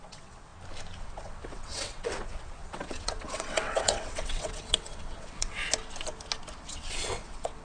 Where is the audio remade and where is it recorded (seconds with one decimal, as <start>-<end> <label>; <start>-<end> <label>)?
0.0-0.5 remade; 0.5-1.0 recorded; 1.0-5.6 remade; 5.6-6.7 recorded; 6.7-7.6 remade